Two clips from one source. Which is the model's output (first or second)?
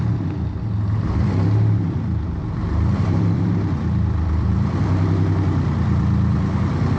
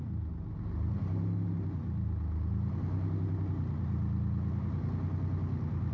first